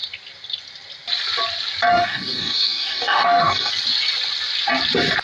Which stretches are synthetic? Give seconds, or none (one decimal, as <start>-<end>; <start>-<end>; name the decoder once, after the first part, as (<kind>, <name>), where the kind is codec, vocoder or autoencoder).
1.9-3.7 (codec, DAC)